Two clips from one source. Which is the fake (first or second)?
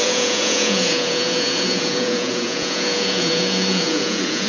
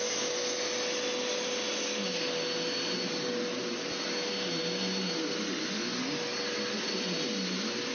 first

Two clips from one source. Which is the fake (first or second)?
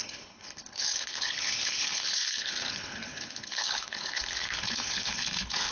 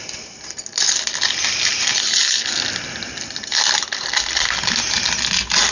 first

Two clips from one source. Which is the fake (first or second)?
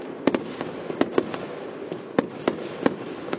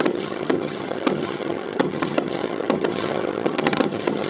second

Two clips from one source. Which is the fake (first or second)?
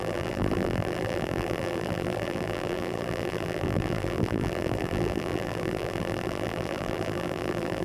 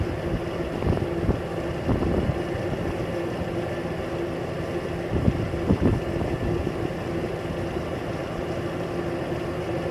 first